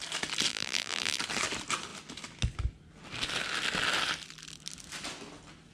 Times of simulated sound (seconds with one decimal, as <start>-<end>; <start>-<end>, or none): 0.5-1.2